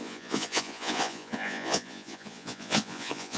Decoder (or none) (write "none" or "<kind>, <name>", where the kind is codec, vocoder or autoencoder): vocoder, Vocos